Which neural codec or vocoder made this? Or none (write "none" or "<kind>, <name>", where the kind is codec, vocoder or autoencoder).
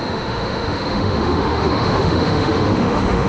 autoencoder, DAC-VAE